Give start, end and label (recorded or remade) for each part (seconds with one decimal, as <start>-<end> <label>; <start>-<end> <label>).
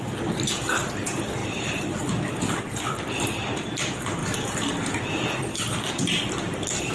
0.0-1.4 recorded; 1.4-2.6 remade; 2.6-6.9 recorded